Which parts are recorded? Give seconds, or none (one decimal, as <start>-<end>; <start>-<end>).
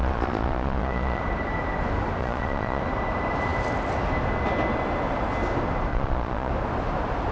1.2-2.2; 2.8-5.9; 6.5-7.3